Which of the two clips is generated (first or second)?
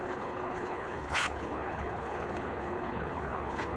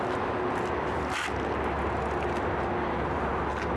first